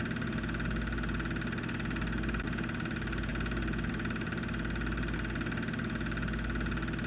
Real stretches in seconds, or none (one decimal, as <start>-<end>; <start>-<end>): 0.0-7.1